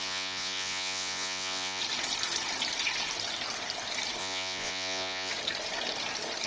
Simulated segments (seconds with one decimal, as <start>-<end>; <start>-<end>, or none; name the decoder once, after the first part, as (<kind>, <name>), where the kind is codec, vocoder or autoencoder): 0.0-1.8 (vocoder, Vocos); 4.2-5.3